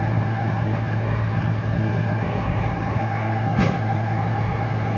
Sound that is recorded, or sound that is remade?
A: remade